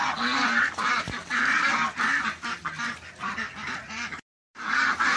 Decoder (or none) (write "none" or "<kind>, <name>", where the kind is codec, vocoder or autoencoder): vocoder, BigVGAN v2